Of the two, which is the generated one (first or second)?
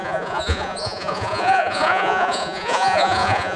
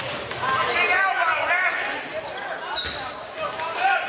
first